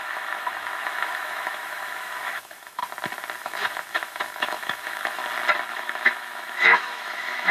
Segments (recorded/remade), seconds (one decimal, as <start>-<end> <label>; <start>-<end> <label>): 0.0-2.8 remade; 2.8-3.4 recorded; 3.4-5.2 remade; 5.2-5.7 recorded; 5.7-7.5 remade